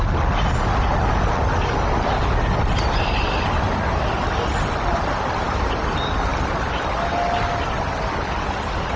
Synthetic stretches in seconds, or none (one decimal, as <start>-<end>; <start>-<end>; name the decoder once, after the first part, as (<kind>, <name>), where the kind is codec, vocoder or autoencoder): 6.3-7.1 (vocoder, BigVGAN v2)